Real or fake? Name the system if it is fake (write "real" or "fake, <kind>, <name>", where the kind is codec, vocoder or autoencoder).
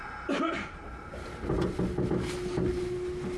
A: real